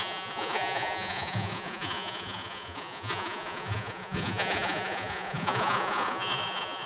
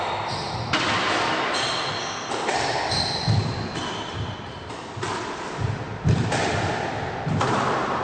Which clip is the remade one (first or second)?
first